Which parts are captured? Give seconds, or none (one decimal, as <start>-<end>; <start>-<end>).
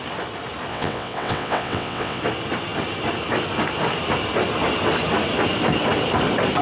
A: 0.0-0.7; 2.2-6.6